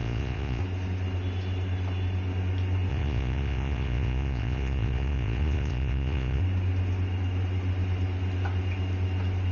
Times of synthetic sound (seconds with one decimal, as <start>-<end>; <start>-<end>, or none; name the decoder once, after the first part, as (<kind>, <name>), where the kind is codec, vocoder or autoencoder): 0.0-0.6 (vocoder, Vocos); 2.9-6.4